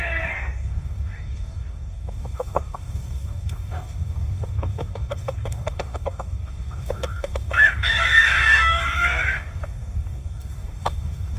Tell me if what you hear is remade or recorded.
remade